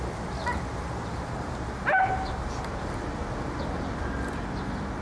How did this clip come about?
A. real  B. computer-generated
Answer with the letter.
A